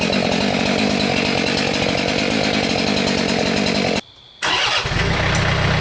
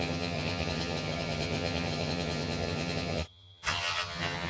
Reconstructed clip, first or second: second